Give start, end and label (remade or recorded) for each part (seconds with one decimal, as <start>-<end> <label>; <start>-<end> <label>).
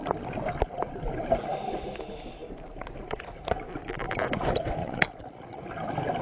0.0-4.8 recorded; 4.8-5.6 remade; 5.6-6.2 recorded